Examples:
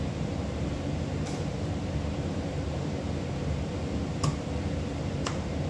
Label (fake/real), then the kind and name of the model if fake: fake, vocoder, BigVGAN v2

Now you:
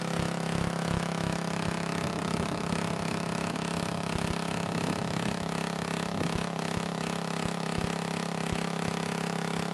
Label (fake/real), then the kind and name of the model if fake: fake, autoencoder, DAC-VAE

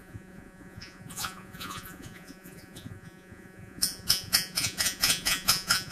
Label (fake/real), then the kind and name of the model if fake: fake, vocoder, Vocos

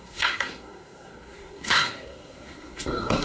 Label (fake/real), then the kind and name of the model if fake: fake, codec, SNAC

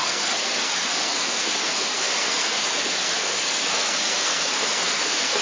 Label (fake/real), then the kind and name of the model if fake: fake, codec, SNAC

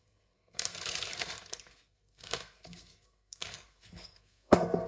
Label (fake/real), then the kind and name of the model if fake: fake, codec, SNAC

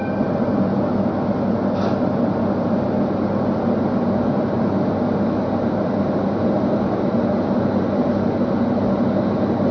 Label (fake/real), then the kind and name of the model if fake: real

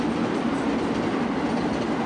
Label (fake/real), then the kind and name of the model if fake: real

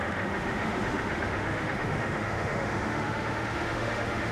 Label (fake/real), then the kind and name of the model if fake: fake, autoencoder, DAC-VAE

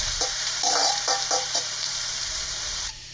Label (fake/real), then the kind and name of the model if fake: fake, vocoder, BigVGAN v2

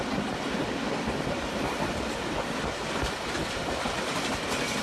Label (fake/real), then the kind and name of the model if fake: real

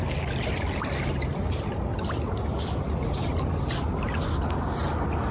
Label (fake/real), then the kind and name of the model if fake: real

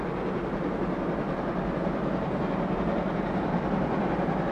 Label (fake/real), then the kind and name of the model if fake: real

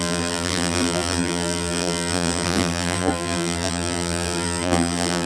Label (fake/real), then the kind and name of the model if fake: fake, vocoder, BigVGAN v2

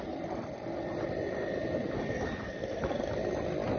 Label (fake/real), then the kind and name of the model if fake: real